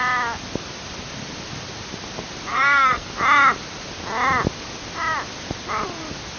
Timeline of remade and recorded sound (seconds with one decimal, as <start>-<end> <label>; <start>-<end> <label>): 0.0-2.5 recorded; 2.5-3.1 remade; 3.1-6.4 recorded